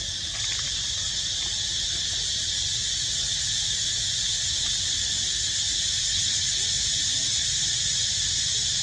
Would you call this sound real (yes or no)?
yes